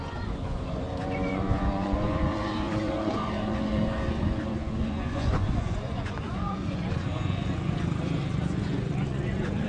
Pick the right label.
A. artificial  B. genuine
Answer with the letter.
A